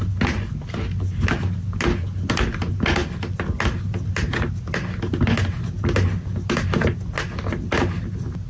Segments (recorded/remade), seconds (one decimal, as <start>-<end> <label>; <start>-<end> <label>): 0.0-8.5 recorded